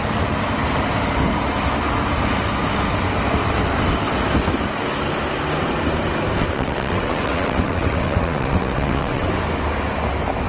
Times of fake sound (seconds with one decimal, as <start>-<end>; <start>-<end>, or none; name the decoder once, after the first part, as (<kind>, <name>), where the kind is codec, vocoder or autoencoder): 6.4-9.3 (vocoder, WaveNeXt)